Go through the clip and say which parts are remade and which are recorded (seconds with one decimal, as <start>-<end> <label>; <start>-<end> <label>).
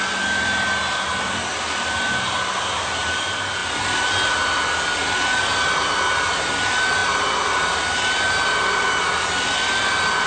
0.0-10.3 recorded